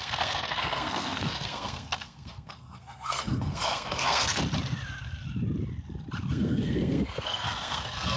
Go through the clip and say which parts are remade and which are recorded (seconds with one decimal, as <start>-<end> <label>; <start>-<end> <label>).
0.0-4.4 remade; 4.4-6.3 recorded; 6.3-8.2 remade